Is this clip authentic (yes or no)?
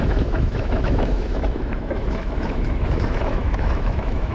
no